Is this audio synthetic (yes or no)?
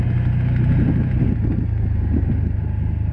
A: no